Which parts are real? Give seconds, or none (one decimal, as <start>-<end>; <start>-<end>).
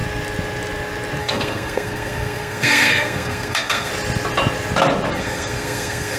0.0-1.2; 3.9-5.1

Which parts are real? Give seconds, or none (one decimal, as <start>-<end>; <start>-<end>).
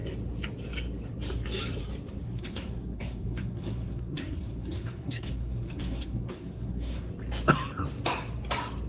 0.0-2.2; 7.1-8.9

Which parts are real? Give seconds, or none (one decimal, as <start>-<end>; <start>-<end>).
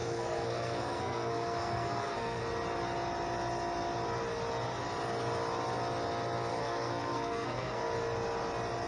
2.4-6.5; 7.8-8.9